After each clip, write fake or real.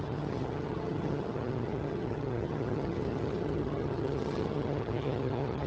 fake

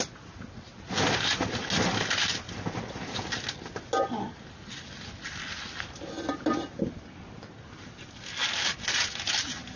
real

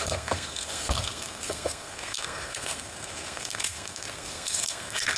fake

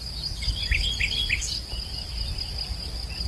real